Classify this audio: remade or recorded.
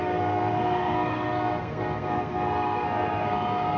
remade